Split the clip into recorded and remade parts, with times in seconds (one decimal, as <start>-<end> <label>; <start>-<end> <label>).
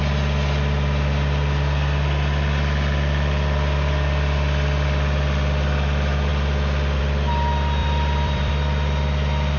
0.0-7.8 recorded; 7.8-8.5 remade; 8.5-9.6 recorded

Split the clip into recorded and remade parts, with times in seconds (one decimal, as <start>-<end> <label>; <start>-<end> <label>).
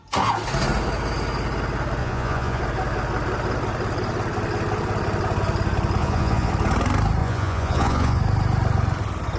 0.0-2.0 recorded; 2.0-2.6 remade; 2.6-6.0 recorded; 6.0-6.5 remade; 6.5-7.2 recorded; 7.2-8.2 remade; 8.2-9.4 recorded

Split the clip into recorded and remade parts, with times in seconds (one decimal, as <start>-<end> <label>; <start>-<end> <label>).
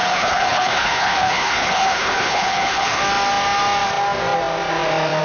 0.0-3.0 remade; 3.0-5.2 recorded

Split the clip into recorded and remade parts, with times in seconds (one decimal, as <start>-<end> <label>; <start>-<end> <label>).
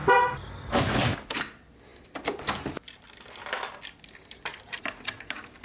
0.0-5.6 recorded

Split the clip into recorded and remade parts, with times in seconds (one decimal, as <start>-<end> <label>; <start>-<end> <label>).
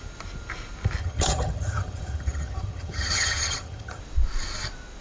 0.0-1.0 recorded; 1.0-4.0 remade; 4.0-5.0 recorded